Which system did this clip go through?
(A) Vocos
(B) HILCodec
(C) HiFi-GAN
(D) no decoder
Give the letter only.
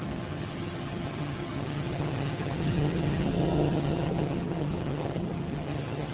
C